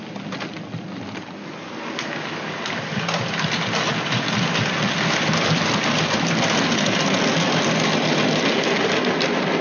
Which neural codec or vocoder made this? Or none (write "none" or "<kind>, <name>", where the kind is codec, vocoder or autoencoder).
none